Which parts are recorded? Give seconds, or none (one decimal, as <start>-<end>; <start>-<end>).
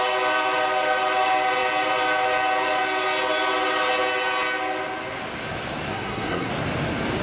0.0-5.9; 6.5-7.2